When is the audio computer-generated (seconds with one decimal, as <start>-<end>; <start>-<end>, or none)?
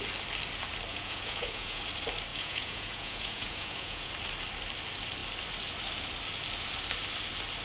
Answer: 0.9-1.8; 2.3-4.1